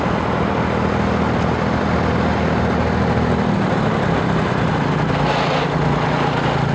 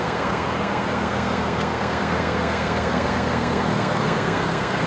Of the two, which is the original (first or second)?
first